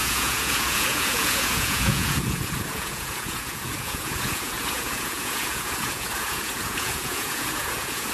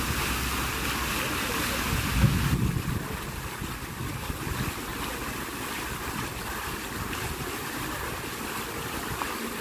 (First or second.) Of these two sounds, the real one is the second